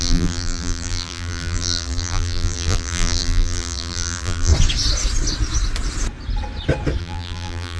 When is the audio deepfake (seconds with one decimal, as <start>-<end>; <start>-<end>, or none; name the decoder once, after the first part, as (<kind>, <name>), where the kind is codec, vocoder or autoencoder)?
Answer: 0.0-4.5 (vocoder, BigVGAN v2); 7.0-7.8